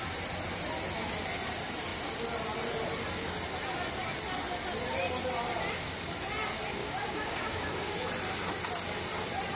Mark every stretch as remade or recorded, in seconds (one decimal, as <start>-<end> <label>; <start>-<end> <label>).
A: 0.0-6.8 recorded; 6.8-7.9 remade; 7.9-9.6 recorded